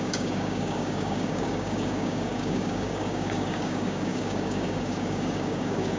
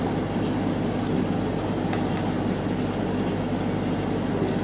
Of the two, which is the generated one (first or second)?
first